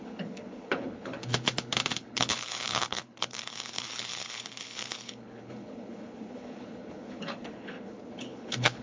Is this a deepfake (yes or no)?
yes